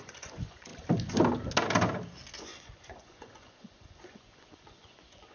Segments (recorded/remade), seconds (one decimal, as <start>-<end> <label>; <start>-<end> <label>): 0.0-0.7 remade; 0.7-2.4 recorded; 2.4-5.3 remade